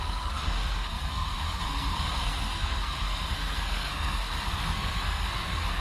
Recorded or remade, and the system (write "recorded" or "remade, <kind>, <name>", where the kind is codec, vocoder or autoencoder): remade, codec, SNAC